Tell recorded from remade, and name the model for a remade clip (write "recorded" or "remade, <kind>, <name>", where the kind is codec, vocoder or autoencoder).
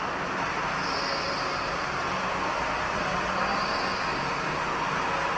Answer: recorded